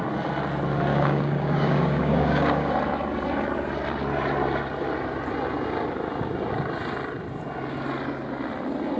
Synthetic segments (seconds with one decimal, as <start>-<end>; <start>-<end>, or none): 0.9-2.7